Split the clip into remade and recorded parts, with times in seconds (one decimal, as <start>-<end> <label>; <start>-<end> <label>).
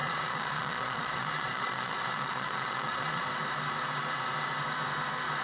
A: 0.0-3.2 remade; 3.2-5.4 recorded